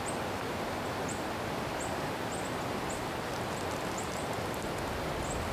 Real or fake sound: real